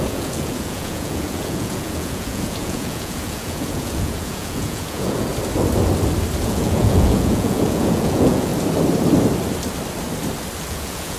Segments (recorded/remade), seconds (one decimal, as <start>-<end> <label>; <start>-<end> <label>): 0.0-5.3 remade; 5.3-6.4 recorded; 6.4-8.5 remade; 8.5-10.7 recorded; 10.7-11.2 remade